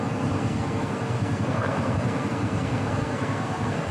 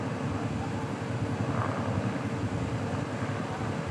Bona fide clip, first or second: second